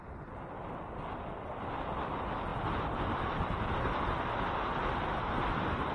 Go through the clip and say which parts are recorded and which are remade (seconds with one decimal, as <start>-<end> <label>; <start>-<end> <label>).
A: 0.0-5.9 recorded